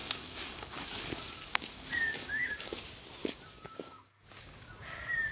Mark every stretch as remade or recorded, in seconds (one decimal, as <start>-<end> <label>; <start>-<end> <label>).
0.0-2.8 remade; 2.8-3.2 recorded; 3.2-4.7 remade; 4.7-5.3 recorded